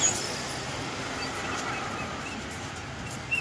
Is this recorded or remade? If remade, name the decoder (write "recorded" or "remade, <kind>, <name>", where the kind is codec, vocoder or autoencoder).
recorded